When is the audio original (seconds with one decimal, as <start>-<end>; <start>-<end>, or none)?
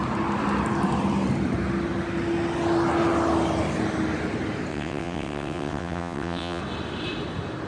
0.0-4.7; 6.6-7.7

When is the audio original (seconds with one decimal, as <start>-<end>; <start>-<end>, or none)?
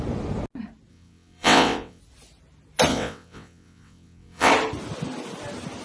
0.0-0.9; 2.0-2.9; 4.5-5.8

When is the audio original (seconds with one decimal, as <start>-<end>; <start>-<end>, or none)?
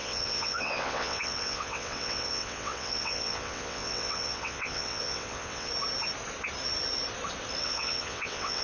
5.7-7.6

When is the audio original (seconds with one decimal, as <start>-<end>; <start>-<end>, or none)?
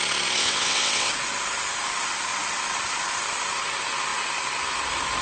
0.0-0.4; 1.1-5.2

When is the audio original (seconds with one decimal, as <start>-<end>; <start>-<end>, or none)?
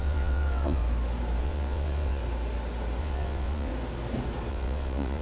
0.8-1.4; 2.2-3.0; 3.7-4.5